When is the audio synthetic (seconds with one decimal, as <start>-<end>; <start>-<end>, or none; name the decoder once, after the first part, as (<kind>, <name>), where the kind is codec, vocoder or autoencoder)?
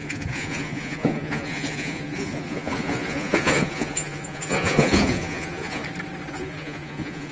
0.0-5.8 (vocoder, Vocos); 6.3-7.3